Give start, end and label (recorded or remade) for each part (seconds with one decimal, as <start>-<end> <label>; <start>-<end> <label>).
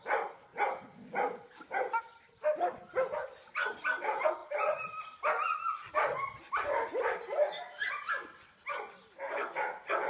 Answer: 0.0-10.1 recorded